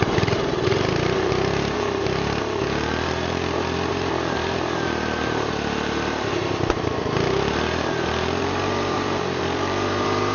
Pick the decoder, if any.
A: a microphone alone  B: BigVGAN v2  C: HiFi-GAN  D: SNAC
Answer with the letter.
B